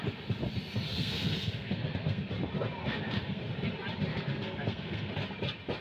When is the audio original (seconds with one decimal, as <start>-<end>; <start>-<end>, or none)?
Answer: 0.0-0.9; 2.3-2.8; 3.4-4.1; 5.1-5.8